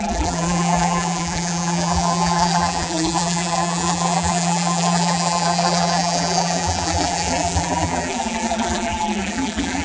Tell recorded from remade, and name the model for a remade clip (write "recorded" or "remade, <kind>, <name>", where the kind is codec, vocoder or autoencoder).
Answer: remade, vocoder, BigVGAN v2